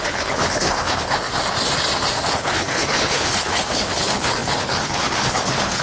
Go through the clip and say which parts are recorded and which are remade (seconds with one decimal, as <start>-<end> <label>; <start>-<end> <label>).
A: 0.0-1.3 remade; 1.3-2.3 recorded; 2.3-5.8 remade